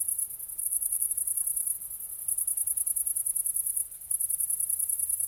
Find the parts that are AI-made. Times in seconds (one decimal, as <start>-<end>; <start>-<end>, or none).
0.6-1.1